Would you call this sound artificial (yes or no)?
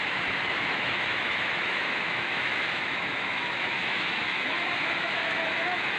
yes